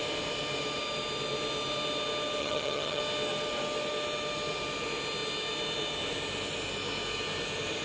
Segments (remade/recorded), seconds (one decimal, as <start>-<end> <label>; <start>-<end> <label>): 0.0-2.4 recorded; 2.4-3.0 remade; 3.0-7.8 recorded